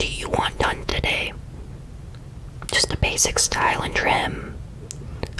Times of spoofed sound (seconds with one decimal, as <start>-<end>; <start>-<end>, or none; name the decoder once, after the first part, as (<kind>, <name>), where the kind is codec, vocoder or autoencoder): 0.0-0.9 (vocoder, Vocos); 3.2-4.2